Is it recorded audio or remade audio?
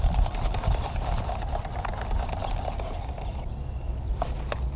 recorded